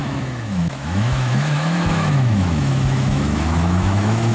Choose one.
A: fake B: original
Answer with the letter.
A